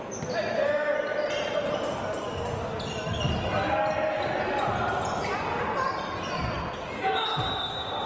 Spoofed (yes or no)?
no